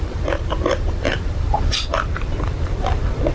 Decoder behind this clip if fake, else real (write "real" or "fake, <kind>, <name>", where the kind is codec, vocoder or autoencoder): fake, vocoder, BigVGAN v2